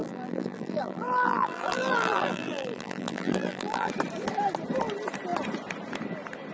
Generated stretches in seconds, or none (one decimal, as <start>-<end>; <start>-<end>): 0.0-3.9